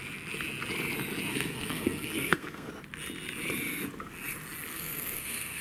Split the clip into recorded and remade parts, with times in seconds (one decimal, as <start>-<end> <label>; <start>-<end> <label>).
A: 0.0-1.3 recorded; 1.3-2.7 remade; 2.7-4.7 recorded; 4.7-5.6 remade